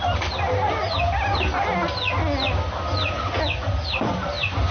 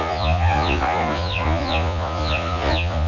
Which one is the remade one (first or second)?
second